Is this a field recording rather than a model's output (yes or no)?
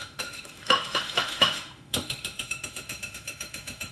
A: no